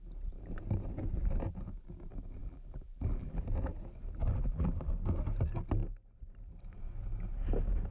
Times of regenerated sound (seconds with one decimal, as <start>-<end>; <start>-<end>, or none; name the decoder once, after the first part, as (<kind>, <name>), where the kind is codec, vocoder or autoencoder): 2.4-3.4 (vocoder, BigVGAN v2); 4.2-4.9